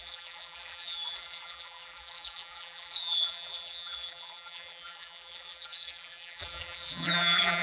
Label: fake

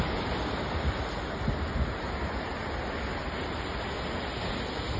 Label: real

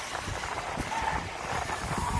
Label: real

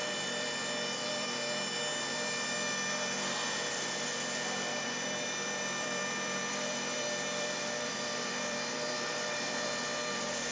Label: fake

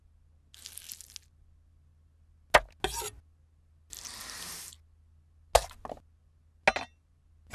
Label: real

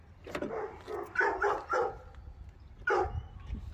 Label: real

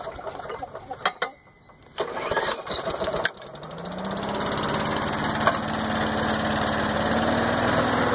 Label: real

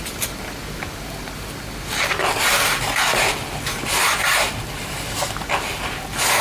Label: real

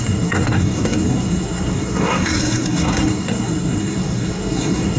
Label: fake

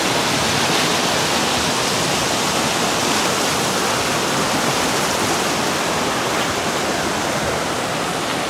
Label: real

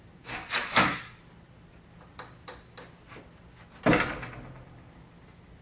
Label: real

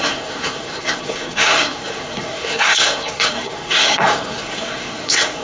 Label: fake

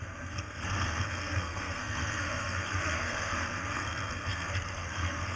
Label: fake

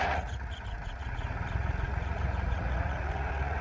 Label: fake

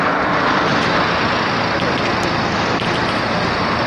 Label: real